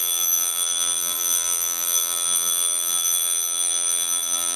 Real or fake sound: fake